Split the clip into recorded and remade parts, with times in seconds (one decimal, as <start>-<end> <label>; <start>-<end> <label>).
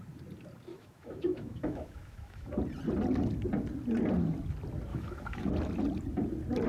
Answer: 0.0-0.7 recorded; 0.7-2.5 remade; 2.5-4.9 recorded; 4.9-5.5 remade; 5.5-6.7 recorded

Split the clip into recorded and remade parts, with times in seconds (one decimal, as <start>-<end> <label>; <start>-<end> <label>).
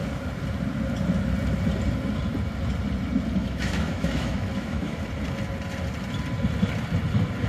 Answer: 0.0-3.4 recorded; 3.4-5.0 remade; 5.0-7.5 recorded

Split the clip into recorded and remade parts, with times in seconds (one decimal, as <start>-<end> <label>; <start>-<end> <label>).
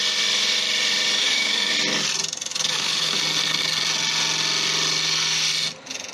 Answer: 0.0-1.2 recorded; 1.2-1.7 remade; 1.7-2.5 recorded; 2.5-3.2 remade; 3.2-6.1 recorded